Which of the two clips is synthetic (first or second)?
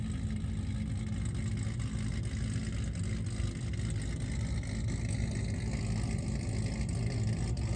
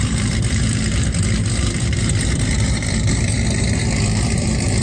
second